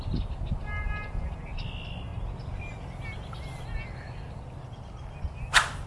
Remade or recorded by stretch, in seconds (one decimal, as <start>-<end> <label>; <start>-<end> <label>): 0.0-5.9 recorded